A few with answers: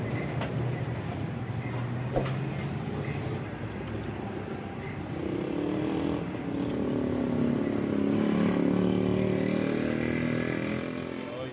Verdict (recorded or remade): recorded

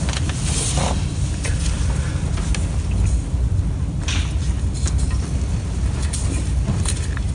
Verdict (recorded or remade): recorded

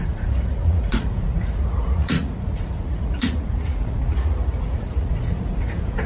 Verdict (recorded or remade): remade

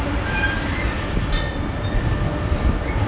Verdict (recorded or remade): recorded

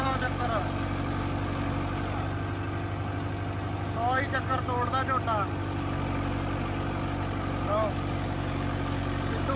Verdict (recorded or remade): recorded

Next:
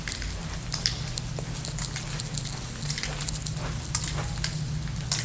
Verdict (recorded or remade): recorded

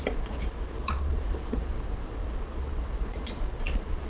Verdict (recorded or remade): remade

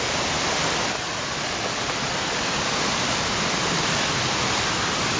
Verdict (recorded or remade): recorded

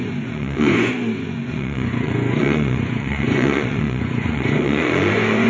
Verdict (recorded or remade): remade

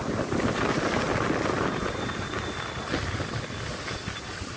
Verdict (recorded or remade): recorded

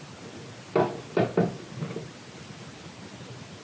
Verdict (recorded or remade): recorded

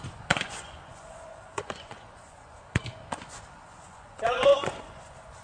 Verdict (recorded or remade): remade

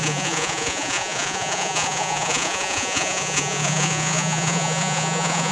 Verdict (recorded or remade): remade